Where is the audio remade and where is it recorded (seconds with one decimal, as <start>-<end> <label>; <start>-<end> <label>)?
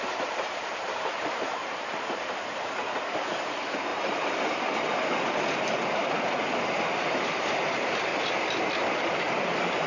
0.0-6.0 remade; 6.0-7.0 recorded; 7.0-8.1 remade; 8.1-9.0 recorded; 9.0-9.9 remade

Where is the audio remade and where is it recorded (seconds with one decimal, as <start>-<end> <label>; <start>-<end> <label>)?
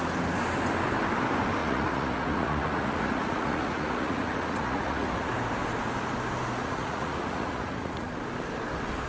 0.0-1.6 recorded; 1.6-5.3 remade; 5.3-6.6 recorded; 6.6-8.2 remade; 8.2-9.1 recorded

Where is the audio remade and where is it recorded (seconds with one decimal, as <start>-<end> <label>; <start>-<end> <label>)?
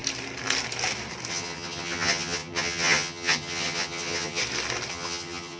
0.0-1.3 recorded; 1.3-4.4 remade; 4.4-4.9 recorded; 4.9-5.6 remade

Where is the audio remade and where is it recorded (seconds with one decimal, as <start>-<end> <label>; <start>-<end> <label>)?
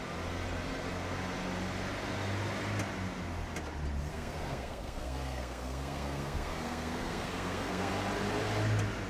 0.0-4.1 recorded; 4.1-7.9 remade; 7.9-9.1 recorded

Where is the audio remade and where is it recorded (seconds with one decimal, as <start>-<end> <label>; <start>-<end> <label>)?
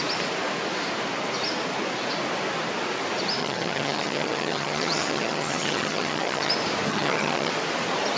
0.0-3.4 recorded; 3.4-6.5 remade; 6.5-6.9 recorded; 6.9-7.5 remade; 7.5-8.2 recorded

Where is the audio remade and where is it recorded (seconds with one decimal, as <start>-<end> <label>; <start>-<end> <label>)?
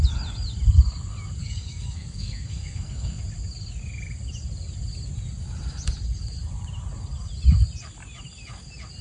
0.0-1.4 recorded; 1.4-3.2 remade; 3.2-9.0 recorded